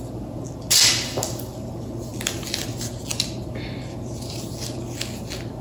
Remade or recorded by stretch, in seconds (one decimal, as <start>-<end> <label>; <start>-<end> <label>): 0.0-5.6 recorded